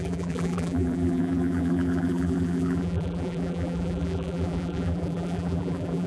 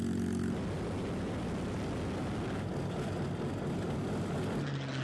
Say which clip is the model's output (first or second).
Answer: first